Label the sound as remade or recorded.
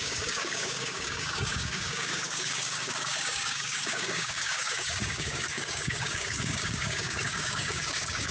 remade